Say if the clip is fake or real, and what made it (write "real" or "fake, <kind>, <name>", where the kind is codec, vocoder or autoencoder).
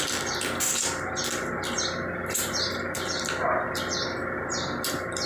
real